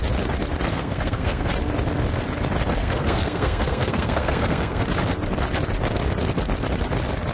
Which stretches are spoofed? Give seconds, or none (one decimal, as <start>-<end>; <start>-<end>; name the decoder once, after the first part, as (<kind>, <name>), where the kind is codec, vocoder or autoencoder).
0.7-1.5 (codec, SNAC); 2.8-4.8

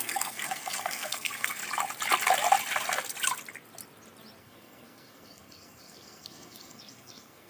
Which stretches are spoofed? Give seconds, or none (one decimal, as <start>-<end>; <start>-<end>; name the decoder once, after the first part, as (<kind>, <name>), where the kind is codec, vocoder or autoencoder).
0.0-1.6 (codec, SNAC); 4.4-7.5

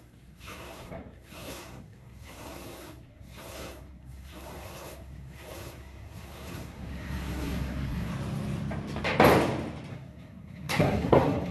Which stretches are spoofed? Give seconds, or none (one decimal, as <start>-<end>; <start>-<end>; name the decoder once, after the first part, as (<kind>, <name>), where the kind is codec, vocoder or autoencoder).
0.0-8.1 (codec, SNAC); 9.9-11.5